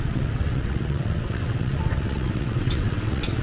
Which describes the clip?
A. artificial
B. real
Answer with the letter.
A